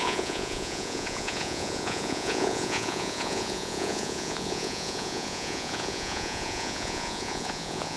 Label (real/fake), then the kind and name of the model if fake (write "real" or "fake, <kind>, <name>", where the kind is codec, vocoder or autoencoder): fake, vocoder, Vocos